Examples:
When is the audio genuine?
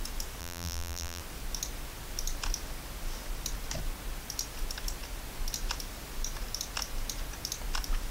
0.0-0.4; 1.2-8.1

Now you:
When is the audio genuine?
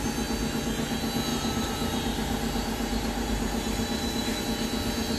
0.0-1.3; 4.4-5.2